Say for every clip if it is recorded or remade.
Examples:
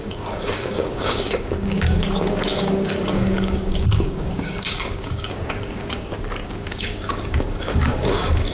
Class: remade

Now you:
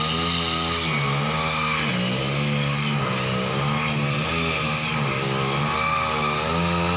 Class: recorded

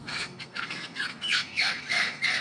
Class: remade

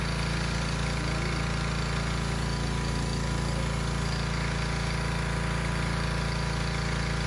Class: recorded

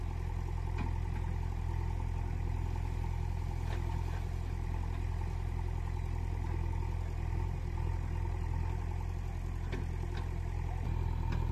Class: recorded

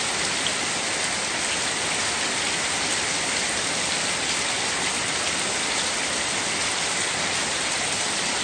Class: recorded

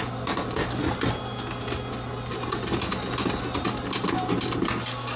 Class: recorded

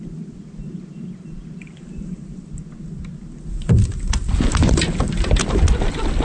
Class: recorded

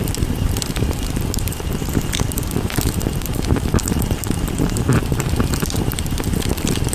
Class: remade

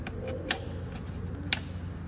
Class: recorded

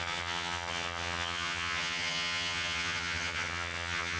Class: remade